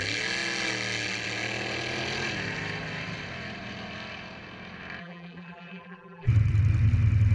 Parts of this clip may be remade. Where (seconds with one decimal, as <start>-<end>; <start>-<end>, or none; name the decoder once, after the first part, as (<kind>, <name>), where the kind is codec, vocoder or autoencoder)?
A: 5.0-6.3 (vocoder, BigVGAN v2)